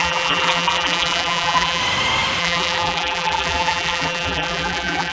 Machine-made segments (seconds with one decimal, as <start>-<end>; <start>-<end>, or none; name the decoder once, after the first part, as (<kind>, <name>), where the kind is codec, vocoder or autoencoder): 0.0-1.8 (vocoder, BigVGAN v2); 2.4-5.1